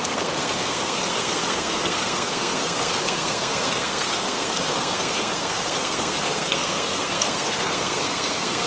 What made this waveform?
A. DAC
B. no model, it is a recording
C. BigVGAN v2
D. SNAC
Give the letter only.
D